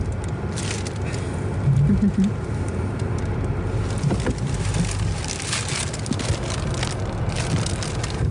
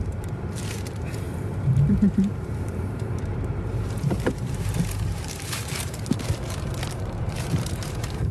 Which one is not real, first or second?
second